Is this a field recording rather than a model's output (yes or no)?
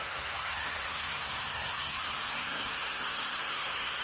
no